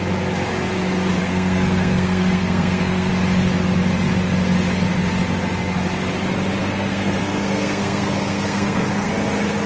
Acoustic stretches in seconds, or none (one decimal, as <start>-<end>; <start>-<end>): 0.0-1.2; 3.1-6.6; 9.1-9.7